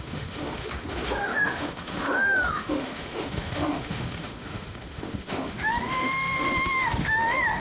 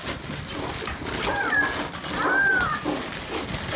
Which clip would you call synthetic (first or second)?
first